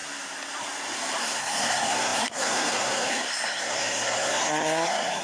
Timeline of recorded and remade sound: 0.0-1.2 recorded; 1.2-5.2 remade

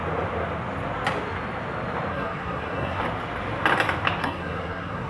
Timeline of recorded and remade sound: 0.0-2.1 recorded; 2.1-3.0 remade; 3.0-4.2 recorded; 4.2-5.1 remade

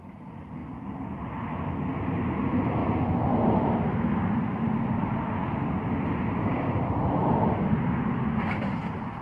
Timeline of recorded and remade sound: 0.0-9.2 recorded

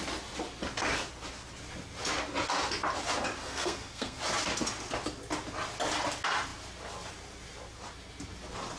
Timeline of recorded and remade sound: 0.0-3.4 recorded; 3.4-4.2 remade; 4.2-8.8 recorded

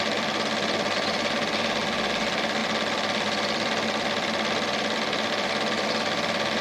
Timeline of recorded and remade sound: 0.0-6.6 recorded

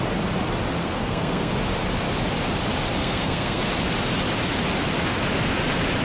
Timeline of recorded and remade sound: 0.0-0.8 recorded; 0.8-1.5 remade; 1.5-3.0 recorded; 3.0-3.6 remade; 3.6-6.0 recorded

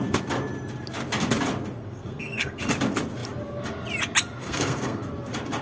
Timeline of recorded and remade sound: 0.0-1.8 recorded; 1.8-2.6 remade; 2.6-4.4 recorded; 4.4-5.0 remade; 5.0-5.6 recorded